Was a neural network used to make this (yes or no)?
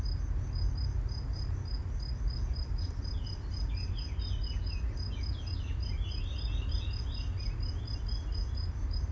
no